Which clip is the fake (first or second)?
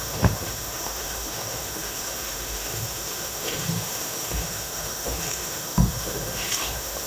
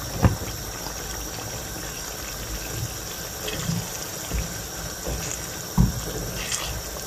first